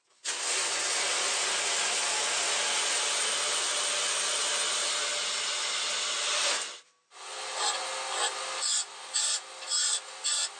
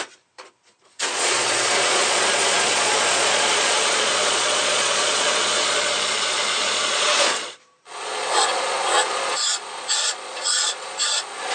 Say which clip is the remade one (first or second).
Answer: second